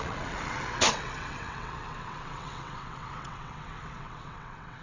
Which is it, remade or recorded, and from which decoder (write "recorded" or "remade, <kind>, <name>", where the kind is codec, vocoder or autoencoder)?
remade, vocoder, WaveNeXt